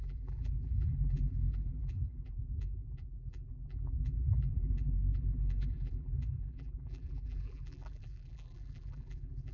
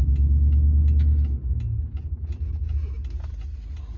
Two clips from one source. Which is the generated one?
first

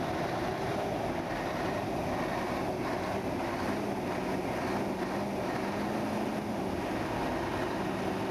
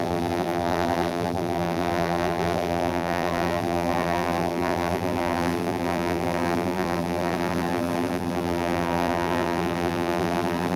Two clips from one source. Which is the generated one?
second